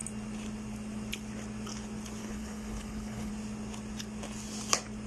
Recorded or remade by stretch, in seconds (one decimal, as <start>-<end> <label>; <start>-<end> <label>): 0.0-2.2 recorded; 2.2-3.3 remade; 3.3-5.1 recorded